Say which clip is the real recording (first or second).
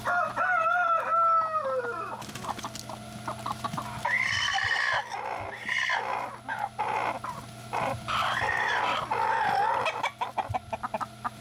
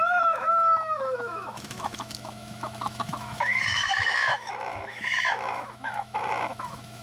first